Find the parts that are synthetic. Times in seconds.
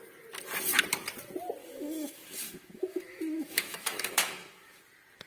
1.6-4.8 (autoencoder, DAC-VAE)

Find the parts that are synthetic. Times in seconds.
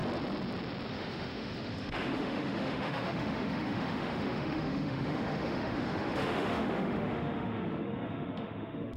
0.9-9.0 (autoencoder, DAC-VAE)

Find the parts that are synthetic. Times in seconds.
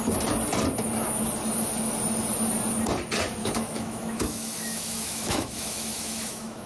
3.4-6.7 (autoencoder, DAC-VAE)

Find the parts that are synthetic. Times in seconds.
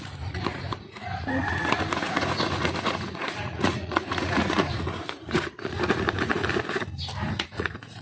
0.0-6.4 (vocoder, Vocos); 7.3-8.0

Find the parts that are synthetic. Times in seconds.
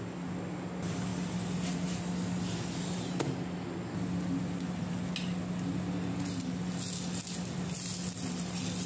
none